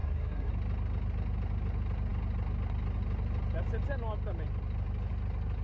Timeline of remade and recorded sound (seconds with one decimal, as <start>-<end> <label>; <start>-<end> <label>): 0.0-0.5 remade; 0.5-5.6 recorded